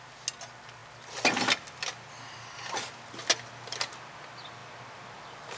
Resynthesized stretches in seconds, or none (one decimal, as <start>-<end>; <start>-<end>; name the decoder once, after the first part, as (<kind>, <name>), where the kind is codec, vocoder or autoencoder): none